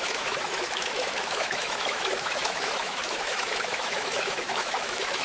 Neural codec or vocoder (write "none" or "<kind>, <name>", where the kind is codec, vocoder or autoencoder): autoencoder, DAC-VAE